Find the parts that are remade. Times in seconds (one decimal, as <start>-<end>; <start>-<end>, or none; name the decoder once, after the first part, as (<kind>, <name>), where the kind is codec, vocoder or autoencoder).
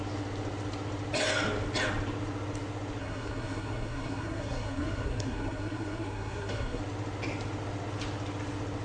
3.0-6.8 (codec, SNAC)